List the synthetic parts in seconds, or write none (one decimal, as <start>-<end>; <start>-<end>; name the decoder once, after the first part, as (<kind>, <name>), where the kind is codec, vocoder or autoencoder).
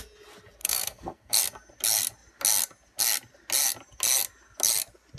0.6-1.4 (codec, SNAC)